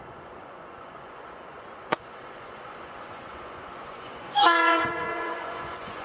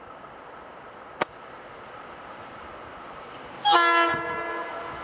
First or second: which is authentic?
second